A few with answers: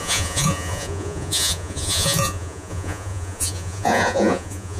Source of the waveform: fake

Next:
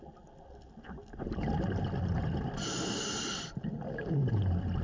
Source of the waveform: real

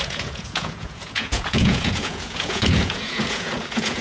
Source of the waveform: fake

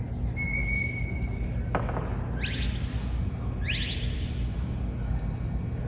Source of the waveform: real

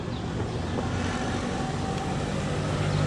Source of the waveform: real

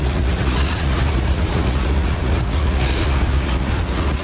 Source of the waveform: fake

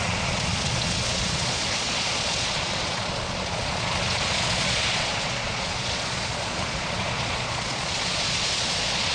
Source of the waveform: fake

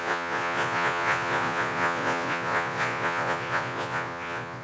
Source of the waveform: fake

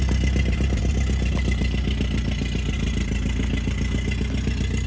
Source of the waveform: real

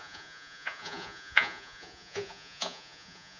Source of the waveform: fake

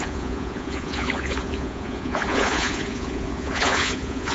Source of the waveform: fake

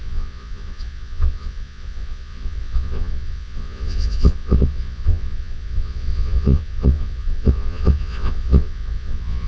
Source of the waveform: fake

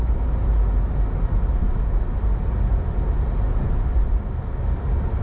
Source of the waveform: real